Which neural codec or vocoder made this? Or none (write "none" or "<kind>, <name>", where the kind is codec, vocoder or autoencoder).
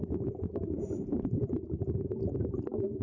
none